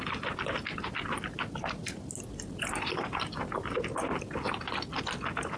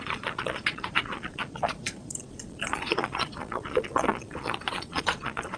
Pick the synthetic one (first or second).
second